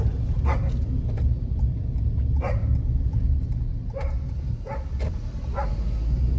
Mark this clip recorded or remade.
recorded